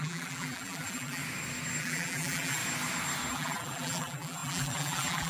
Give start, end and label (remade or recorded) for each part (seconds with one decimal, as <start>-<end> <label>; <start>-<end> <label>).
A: 0.0-1.2 remade; 1.2-1.8 recorded; 1.8-2.6 remade; 2.6-3.3 recorded; 3.3-5.3 remade